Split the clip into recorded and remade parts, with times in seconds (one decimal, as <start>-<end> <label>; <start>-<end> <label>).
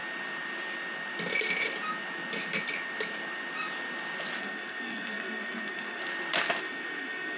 0.0-4.4 recorded; 4.4-6.0 remade; 6.0-6.6 recorded; 6.6-7.4 remade